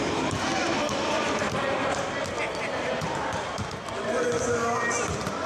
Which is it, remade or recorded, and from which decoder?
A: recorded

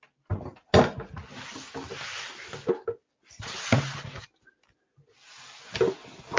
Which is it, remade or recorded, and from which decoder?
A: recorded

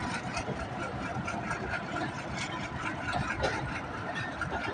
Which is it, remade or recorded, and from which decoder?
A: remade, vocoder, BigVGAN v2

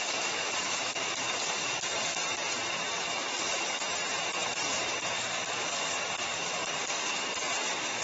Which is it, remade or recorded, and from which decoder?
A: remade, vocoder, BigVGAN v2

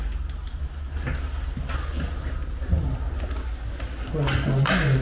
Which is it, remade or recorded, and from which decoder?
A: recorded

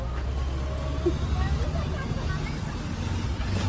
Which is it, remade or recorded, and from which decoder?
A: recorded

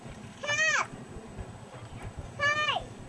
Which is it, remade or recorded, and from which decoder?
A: remade, vocoder, BigVGAN v2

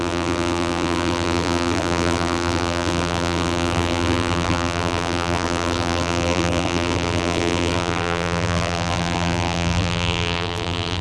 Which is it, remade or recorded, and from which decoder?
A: remade, vocoder, BigVGAN v2